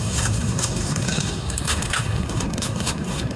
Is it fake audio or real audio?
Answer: fake